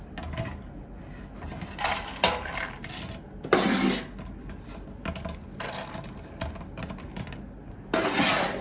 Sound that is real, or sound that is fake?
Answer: real